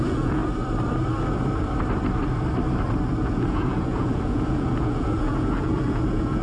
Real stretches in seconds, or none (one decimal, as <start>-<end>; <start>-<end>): 0.4-3.2